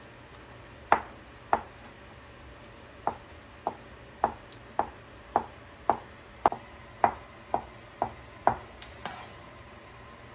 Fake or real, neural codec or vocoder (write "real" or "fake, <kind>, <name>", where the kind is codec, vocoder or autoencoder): real